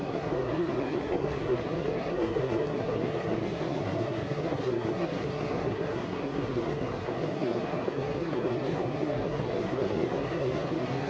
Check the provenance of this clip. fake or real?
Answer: fake